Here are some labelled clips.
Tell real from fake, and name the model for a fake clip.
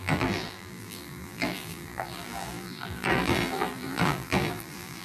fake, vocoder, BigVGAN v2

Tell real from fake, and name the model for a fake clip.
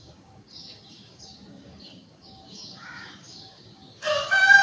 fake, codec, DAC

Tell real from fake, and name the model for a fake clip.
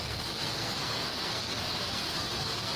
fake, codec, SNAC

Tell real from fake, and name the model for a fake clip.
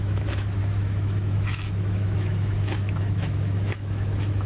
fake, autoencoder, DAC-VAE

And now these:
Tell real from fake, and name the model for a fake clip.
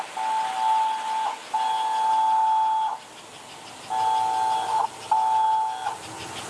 real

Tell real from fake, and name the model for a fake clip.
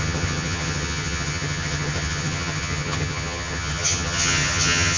fake, vocoder, HiFi-GAN